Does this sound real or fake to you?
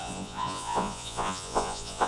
fake